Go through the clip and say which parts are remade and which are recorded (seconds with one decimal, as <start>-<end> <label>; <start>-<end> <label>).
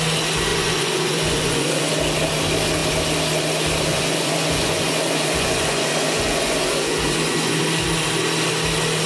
0.0-0.5 recorded; 0.5-1.9 remade; 1.9-3.9 recorded; 3.9-7.6 remade; 7.6-9.1 recorded